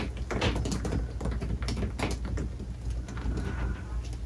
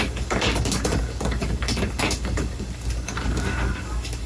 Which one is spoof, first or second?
second